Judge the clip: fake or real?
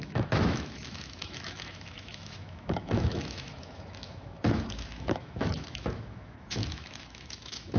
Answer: fake